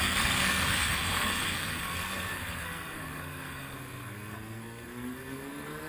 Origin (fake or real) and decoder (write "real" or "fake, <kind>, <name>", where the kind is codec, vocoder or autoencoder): fake, codec, SNAC